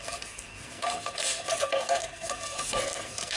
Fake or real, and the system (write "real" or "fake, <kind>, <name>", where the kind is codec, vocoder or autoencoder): fake, codec, SNAC